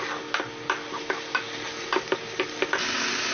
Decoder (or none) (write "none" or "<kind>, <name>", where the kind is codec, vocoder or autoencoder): none